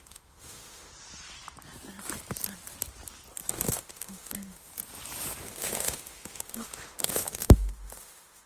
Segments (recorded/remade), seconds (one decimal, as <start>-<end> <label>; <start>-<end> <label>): 0.0-0.9 remade; 0.9-3.5 recorded; 3.5-4.7 remade; 4.7-5.4 recorded; 5.4-8.5 remade